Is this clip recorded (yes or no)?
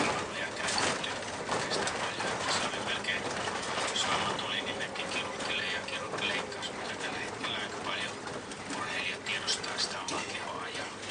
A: yes